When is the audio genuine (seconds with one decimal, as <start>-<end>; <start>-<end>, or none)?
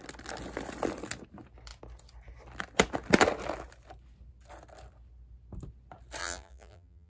0.0-6.2